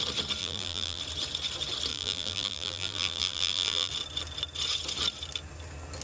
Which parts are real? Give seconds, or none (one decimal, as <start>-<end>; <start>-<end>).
0.0-0.4; 1.0-1.9; 3.9-6.0